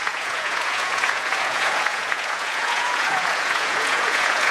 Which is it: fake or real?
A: fake